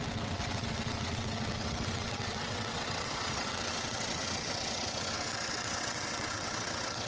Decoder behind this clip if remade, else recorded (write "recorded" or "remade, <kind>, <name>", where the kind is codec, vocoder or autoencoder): remade, vocoder, WaveNeXt